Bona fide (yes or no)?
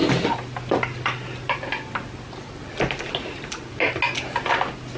yes